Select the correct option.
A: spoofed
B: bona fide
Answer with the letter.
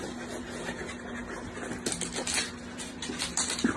B